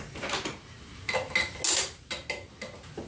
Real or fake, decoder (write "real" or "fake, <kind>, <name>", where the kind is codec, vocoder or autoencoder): real